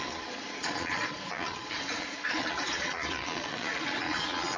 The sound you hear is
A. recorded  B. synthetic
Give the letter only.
B